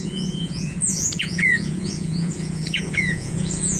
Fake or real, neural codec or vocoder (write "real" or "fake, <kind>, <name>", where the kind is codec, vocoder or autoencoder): fake, vocoder, Vocos